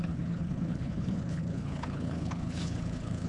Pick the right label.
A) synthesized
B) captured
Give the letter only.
A